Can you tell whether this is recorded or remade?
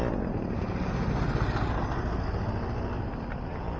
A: recorded